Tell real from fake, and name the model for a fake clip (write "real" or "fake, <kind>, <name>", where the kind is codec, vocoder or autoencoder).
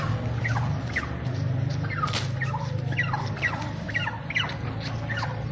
real